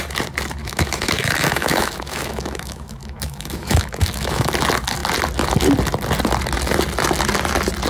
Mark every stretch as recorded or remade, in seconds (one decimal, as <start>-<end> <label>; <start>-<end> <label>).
0.0-0.6 recorded; 0.6-4.5 remade; 4.5-7.9 recorded